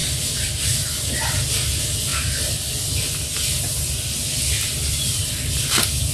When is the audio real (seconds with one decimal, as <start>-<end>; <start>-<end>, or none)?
0.0-6.1